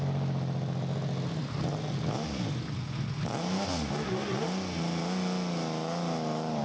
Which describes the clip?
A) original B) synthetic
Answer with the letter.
A